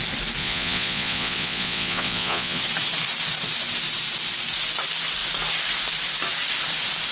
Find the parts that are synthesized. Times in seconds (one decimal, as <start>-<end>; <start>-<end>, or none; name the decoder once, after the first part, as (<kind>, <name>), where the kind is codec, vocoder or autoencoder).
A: 0.4-2.6 (vocoder, Vocos)